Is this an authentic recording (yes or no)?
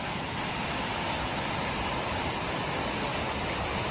yes